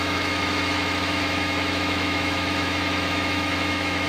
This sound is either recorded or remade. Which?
remade